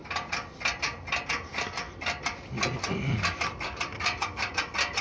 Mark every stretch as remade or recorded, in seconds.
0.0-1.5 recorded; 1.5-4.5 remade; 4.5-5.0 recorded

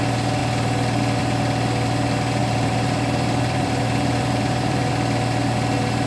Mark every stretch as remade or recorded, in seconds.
0.0-2.4 recorded; 2.4-4.9 remade; 4.9-6.1 recorded

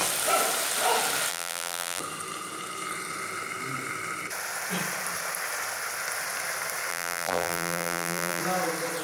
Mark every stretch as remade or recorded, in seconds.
0.0-1.3 recorded; 1.3-2.0 remade; 2.0-6.9 recorded; 6.9-8.4 remade; 8.4-9.0 recorded

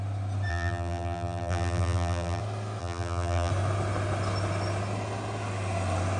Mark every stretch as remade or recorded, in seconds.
0.0-0.5 recorded; 0.5-2.4 remade; 2.4-2.8 recorded; 2.8-3.5 remade; 3.5-6.2 recorded